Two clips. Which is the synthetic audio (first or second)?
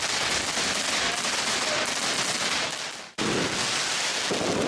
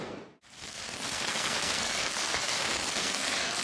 second